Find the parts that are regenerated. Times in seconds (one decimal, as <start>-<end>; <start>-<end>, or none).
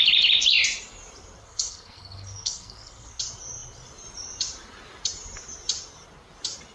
1.4-3.2